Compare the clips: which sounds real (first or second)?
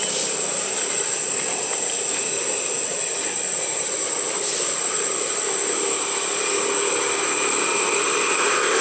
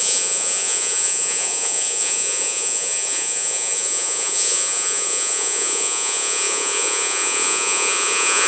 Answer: first